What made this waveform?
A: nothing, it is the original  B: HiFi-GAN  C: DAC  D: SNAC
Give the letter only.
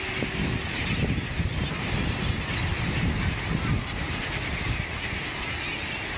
A